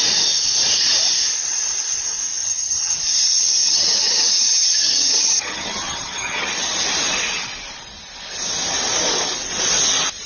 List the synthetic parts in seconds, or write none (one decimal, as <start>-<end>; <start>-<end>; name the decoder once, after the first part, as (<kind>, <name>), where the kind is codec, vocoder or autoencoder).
2.4-3.0 (vocoder, HiFi-GAN); 3.6-6.5